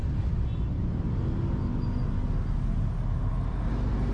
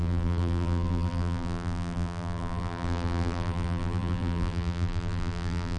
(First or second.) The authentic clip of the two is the first